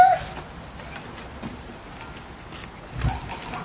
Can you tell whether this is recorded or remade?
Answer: recorded